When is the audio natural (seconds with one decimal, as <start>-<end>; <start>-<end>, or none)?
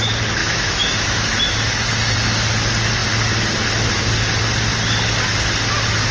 0.0-0.4; 1.9-6.1